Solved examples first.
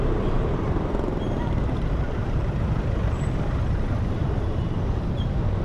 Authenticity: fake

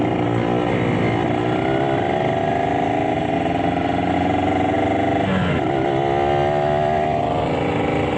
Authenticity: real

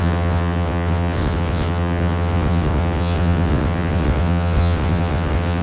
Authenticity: fake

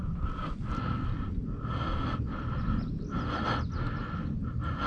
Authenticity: real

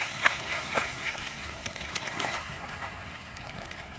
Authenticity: fake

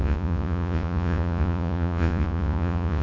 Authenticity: fake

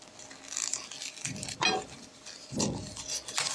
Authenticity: real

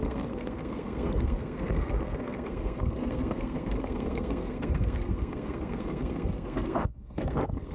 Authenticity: fake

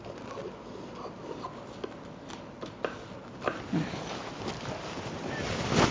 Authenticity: real